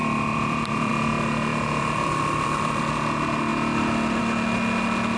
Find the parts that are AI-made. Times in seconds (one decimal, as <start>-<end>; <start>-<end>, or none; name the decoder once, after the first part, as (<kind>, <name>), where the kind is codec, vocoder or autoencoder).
0.0-0.9 (vocoder, BigVGAN v2); 1.5-2.8